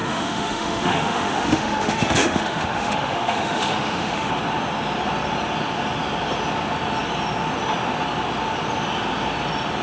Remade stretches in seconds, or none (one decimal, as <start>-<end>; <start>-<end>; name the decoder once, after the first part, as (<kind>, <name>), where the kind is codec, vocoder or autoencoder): 0.0-4.3 (autoencoder, DAC-VAE)